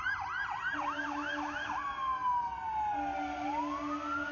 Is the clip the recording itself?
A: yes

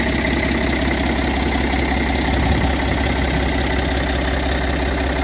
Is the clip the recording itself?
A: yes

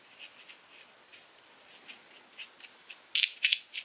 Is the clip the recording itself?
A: yes